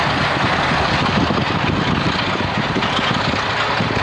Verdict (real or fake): real